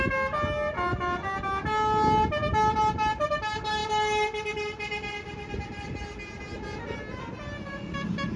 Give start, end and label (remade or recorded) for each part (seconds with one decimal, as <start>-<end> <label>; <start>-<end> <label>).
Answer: 0.0-8.4 recorded